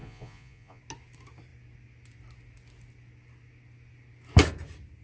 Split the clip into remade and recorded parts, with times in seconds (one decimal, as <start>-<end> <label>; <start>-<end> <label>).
0.0-0.8 remade; 0.8-5.0 recorded